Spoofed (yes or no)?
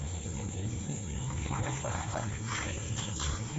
yes